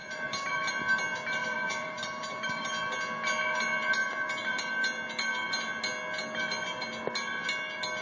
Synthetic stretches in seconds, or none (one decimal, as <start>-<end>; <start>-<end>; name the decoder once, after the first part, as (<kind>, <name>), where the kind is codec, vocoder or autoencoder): 0.0-0.7 (vocoder, BigVGAN v2); 1.4-2.7; 4.0-4.7